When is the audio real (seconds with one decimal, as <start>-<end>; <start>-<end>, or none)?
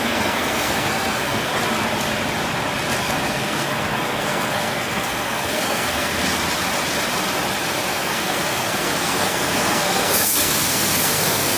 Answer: 1.5-3.0; 6.1-7.9